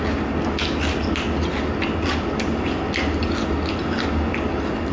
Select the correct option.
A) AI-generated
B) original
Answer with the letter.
B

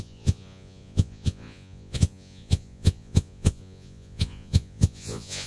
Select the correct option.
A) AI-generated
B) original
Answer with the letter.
A